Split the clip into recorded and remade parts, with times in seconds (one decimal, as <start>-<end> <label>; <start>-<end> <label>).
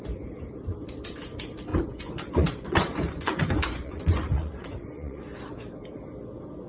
0.0-1.7 recorded; 1.7-5.2 remade; 5.2-6.7 recorded